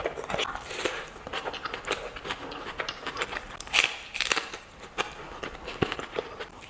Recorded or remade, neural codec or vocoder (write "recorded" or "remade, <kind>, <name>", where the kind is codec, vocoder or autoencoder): recorded